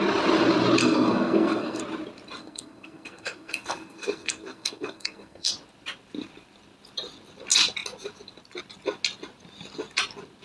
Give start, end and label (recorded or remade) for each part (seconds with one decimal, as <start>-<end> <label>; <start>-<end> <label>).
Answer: 0.0-0.8 recorded; 0.8-1.8 remade; 1.8-2.4 recorded; 2.4-5.5 remade; 5.5-10.4 recorded